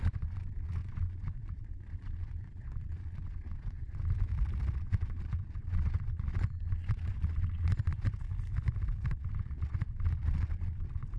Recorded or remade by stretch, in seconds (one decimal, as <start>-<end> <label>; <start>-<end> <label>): 0.0-4.3 remade; 4.3-4.8 recorded; 4.8-8.3 remade; 8.3-9.1 recorded; 9.1-11.2 remade